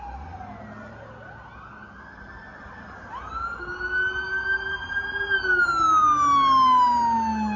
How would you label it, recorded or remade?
recorded